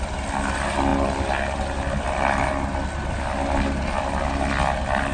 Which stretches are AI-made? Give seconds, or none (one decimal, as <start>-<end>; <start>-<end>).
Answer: none